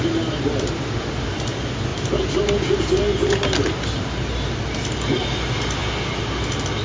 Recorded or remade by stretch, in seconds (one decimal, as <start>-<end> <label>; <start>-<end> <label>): 0.0-6.8 recorded